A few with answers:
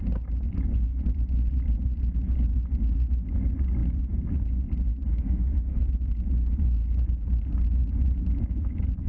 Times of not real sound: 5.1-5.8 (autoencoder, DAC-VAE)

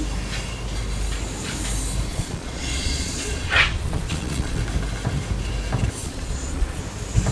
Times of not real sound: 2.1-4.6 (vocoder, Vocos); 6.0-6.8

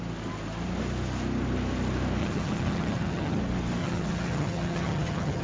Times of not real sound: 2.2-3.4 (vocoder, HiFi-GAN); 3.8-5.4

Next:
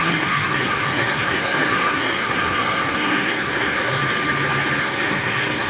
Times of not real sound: 0.0-4.0 (codec, SNAC); 4.8-5.7

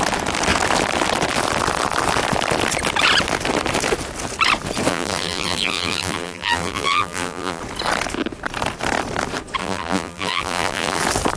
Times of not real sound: 4.9-7.6 (vocoder, BigVGAN v2); 9.6-11.0